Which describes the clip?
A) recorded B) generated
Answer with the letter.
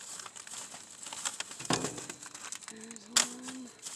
A